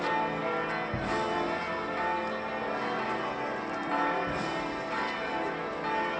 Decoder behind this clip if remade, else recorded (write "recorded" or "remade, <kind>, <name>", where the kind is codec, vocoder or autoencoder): recorded